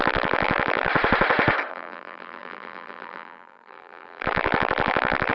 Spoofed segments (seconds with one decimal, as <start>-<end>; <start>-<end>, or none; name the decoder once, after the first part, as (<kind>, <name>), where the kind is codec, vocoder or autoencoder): 0.0-0.9 (vocoder, BigVGAN v2); 1.7-5.3